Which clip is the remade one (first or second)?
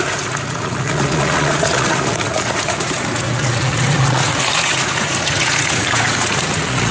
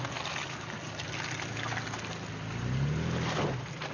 first